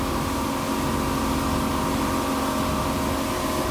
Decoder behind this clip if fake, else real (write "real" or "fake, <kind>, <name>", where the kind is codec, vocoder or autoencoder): real